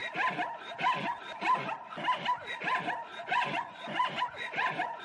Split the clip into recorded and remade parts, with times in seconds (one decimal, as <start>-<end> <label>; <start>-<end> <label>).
0.0-3.1 recorded; 3.1-5.0 remade